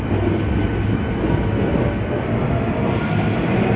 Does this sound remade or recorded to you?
recorded